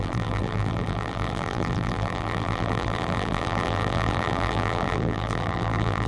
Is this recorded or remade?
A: remade